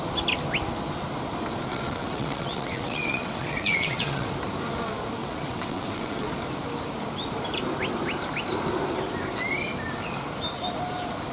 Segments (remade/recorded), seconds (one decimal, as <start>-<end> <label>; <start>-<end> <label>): 0.0-1.7 recorded; 1.7-4.3 remade; 4.3-5.2 recorded; 5.2-6.3 remade; 6.3-11.3 recorded

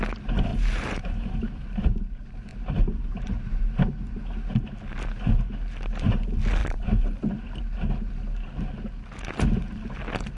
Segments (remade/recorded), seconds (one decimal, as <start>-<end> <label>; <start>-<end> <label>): 0.0-0.5 recorded; 0.5-1.6 remade; 1.6-2.5 recorded; 2.5-3.6 remade; 3.6-6.6 recorded; 6.6-7.5 remade; 7.5-10.4 recorded

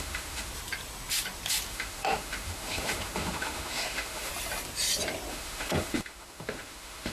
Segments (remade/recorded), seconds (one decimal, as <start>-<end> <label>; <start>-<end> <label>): 0.0-0.5 remade; 0.5-1.7 recorded; 1.7-4.3 remade; 4.3-5.3 recorded; 5.3-7.1 remade

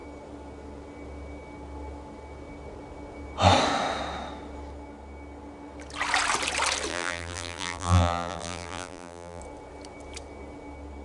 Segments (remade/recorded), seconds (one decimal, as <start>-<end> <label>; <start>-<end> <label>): 0.0-6.9 recorded; 6.9-9.4 remade; 9.4-11.0 recorded

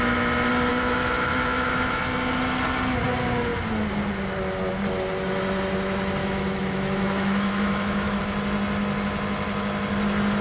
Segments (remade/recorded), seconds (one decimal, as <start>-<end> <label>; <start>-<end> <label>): 0.0-0.7 recorded; 0.7-2.0 remade; 2.0-6.2 recorded; 6.2-8.2 remade; 8.2-10.4 recorded